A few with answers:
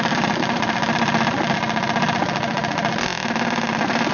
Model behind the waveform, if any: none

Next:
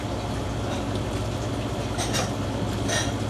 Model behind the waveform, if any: none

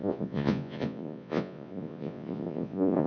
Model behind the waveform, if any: vocoder, Vocos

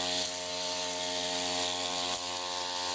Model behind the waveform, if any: none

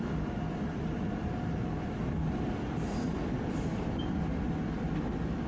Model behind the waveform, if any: none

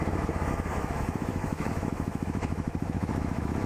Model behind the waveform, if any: autoencoder, DAC-VAE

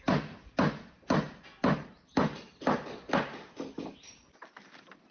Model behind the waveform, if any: none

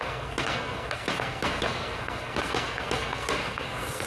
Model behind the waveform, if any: codec, SNAC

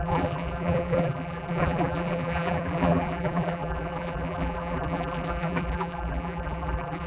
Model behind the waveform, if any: vocoder, BigVGAN v2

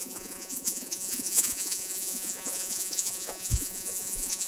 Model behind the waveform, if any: vocoder, Vocos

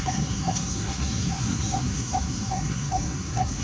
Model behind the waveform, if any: codec, SNAC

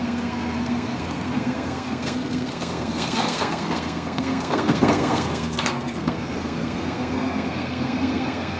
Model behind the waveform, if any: codec, SNAC